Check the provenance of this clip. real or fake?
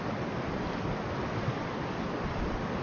real